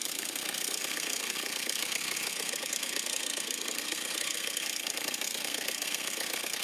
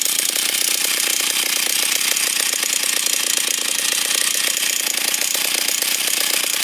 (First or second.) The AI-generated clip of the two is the first